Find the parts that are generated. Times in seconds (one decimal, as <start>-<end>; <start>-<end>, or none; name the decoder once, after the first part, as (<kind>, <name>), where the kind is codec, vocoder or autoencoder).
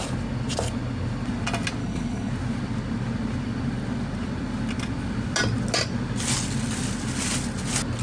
1.8-2.3 (codec, HILCodec)